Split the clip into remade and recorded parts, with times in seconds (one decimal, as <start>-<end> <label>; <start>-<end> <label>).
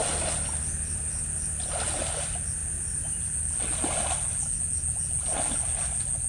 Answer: 0.0-6.3 recorded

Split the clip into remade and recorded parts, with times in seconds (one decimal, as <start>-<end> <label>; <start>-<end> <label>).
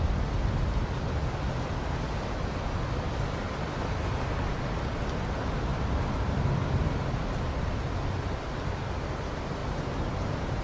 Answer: 0.0-5.7 recorded; 5.7-6.4 remade; 6.4-9.6 recorded; 9.6-10.6 remade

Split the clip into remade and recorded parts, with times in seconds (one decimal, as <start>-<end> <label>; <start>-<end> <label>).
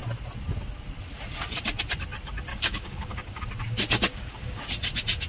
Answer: 0.0-2.5 recorded; 2.5-3.4 remade; 3.4-4.1 recorded; 4.1-4.6 remade; 4.6-5.3 recorded